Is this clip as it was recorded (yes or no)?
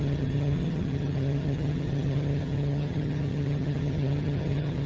no